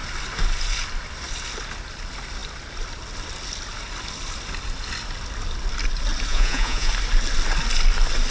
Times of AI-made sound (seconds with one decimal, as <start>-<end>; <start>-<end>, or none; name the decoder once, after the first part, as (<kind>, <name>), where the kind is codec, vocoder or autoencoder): 6.3-6.9 (vocoder, Vocos)